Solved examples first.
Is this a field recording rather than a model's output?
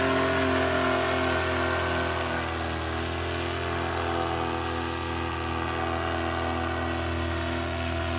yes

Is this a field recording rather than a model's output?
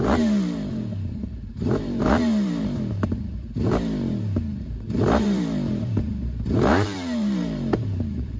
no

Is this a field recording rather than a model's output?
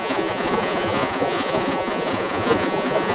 no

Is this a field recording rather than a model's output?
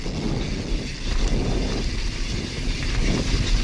yes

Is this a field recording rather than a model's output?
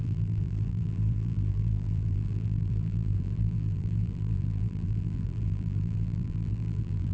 no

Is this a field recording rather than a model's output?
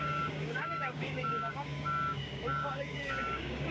no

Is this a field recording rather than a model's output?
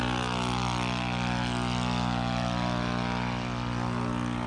yes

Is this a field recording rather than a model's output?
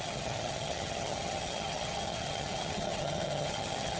no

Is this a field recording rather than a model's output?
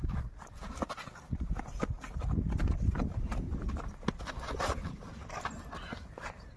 yes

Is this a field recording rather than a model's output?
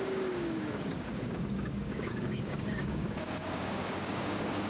no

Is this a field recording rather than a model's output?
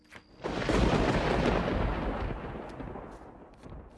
yes